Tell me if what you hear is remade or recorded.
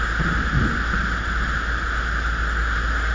recorded